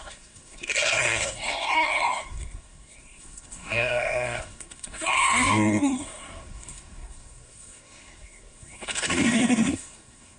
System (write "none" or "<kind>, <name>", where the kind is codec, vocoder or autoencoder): codec, SNAC